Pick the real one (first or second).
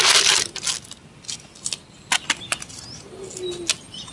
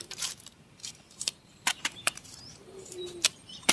first